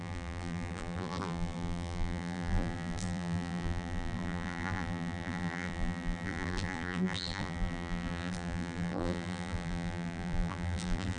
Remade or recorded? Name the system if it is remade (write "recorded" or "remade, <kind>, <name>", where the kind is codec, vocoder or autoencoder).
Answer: remade, vocoder, BigVGAN v2